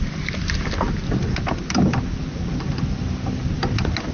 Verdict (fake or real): real